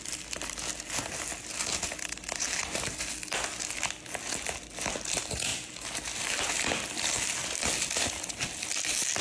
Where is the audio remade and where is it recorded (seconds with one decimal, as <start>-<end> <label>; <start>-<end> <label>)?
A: 0.0-9.2 recorded